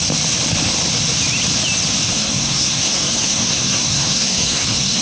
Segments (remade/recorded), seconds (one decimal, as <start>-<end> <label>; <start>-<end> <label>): 0.0-2.0 recorded; 2.0-5.0 remade